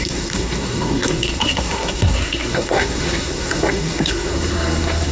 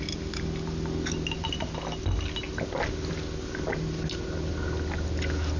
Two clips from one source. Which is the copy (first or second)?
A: first